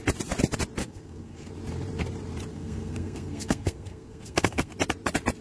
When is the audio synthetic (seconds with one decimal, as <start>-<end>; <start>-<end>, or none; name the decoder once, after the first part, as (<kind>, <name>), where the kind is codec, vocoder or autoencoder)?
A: 0.8-1.5 (codec, SNAC); 2.5-4.7

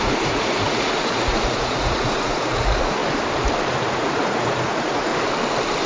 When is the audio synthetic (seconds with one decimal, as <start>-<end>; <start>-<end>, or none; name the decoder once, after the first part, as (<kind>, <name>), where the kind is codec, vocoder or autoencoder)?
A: 0.0-3.0 (vocoder, Vocos); 3.8-5.1

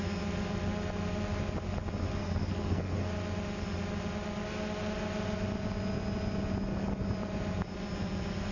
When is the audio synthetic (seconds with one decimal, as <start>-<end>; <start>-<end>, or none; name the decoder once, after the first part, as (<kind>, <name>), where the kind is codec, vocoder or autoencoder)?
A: 2.2-3.1 (codec, SNAC)

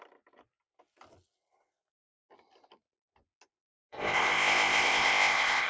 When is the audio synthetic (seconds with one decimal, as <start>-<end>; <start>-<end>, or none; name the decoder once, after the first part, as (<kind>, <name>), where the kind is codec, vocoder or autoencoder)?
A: 3.9-5.7 (codec, ZipCodec)

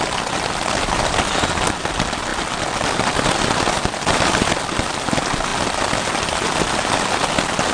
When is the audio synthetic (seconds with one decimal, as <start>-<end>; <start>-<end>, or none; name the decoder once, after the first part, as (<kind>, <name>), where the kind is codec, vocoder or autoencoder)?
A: none